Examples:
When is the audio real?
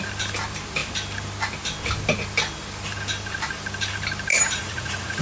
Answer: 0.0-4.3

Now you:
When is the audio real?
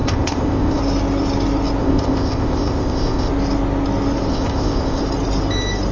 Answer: 0.8-1.8; 3.3-4.3; 5.0-5.9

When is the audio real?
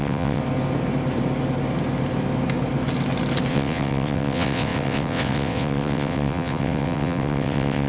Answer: 0.4-3.5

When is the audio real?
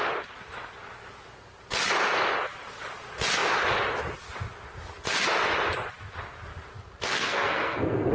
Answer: 0.0-7.1